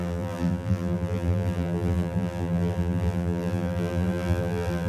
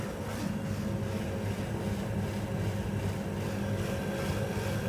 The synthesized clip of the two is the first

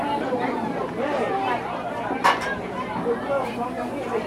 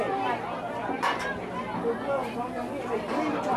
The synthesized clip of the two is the first